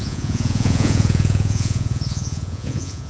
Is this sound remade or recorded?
remade